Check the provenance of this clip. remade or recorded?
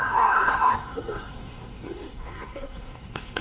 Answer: remade